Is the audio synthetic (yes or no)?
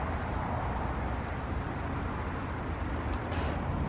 no